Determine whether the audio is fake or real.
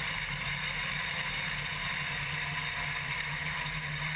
real